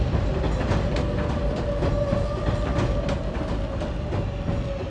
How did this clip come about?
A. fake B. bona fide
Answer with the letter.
B